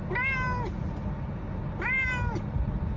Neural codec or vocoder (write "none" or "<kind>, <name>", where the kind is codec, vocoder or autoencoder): none